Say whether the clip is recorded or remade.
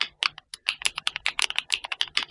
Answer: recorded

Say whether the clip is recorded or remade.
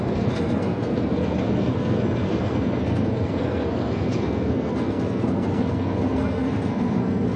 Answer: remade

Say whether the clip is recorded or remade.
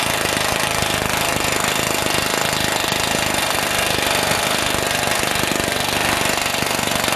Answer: recorded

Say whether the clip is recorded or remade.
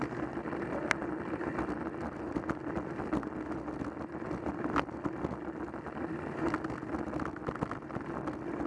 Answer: recorded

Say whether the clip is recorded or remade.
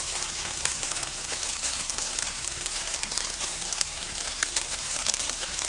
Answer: remade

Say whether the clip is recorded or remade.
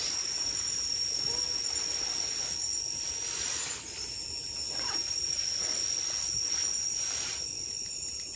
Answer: recorded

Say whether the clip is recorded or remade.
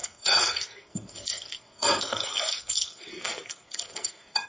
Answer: remade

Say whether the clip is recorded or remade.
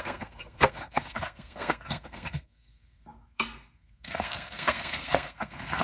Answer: remade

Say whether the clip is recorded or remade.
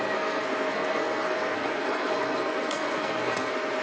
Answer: remade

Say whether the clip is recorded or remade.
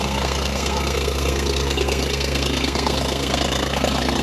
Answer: remade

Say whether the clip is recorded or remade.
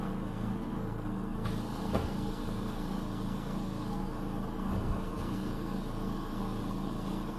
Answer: remade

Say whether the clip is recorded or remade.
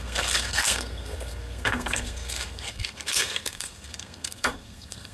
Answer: remade